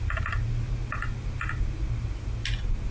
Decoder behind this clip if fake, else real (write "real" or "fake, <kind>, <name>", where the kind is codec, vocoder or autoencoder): real